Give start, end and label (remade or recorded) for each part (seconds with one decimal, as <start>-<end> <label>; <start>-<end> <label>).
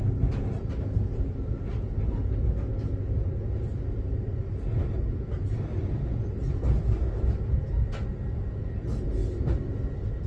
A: 0.0-10.3 recorded